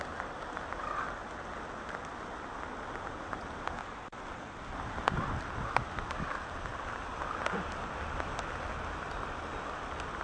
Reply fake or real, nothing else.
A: real